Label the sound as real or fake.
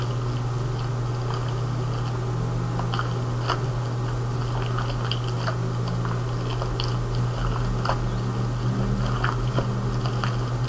real